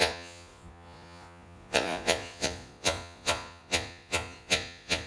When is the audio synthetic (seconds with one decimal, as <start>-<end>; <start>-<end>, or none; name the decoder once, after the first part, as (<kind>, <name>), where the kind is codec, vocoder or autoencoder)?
0.0-5.1 (vocoder, Vocos)